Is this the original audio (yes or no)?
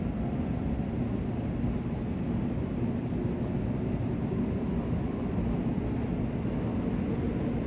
yes